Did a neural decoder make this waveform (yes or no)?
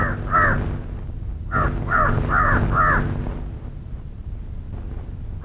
no